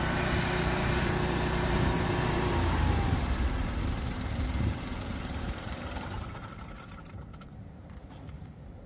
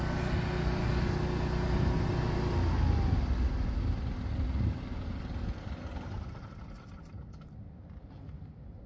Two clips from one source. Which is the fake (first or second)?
first